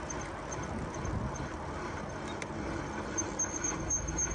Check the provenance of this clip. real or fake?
real